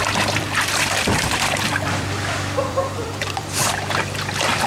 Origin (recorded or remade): remade